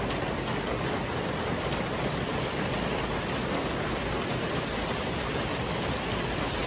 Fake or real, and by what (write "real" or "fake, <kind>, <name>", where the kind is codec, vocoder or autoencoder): real